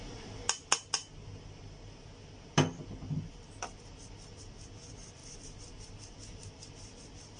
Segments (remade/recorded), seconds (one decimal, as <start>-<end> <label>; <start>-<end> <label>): 0.0-7.4 recorded